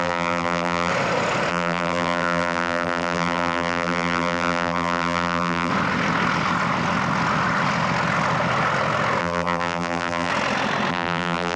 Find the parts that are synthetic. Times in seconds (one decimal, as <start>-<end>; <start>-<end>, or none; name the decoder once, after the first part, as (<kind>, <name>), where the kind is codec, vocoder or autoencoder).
0.0-0.9 (vocoder, BigVGAN v2); 1.5-5.7; 9.2-10.3; 10.9-11.6